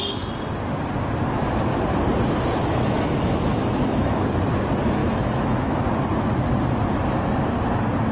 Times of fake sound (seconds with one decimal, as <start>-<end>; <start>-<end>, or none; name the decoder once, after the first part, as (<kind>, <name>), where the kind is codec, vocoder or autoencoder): 2.6-4.2 (autoencoder, DAC-VAE); 5.0-5.8